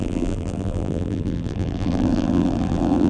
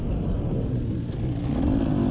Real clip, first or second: second